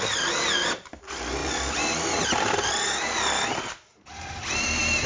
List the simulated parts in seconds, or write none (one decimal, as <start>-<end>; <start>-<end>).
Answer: none